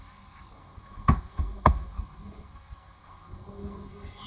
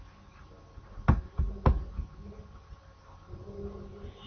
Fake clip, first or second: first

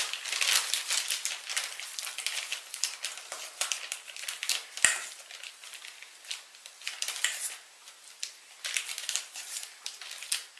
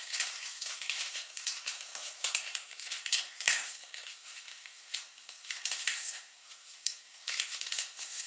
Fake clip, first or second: second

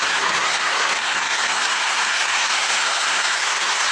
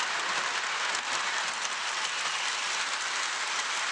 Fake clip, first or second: first